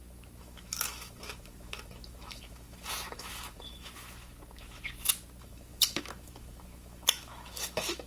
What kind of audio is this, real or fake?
fake